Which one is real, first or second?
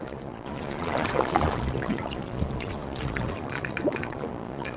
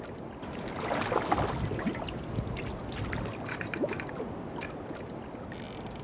second